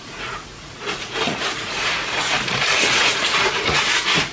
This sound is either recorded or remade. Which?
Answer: remade